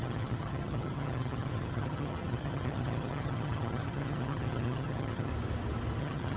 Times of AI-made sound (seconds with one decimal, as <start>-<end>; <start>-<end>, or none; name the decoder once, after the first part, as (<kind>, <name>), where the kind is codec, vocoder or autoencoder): 0.0-5.3 (vocoder, HiFi-GAN); 6.0-6.4